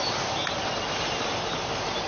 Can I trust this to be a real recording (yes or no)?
yes